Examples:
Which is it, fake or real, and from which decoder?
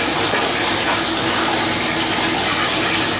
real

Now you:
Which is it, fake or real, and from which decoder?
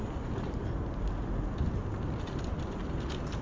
real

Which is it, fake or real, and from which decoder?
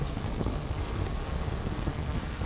fake, codec, SNAC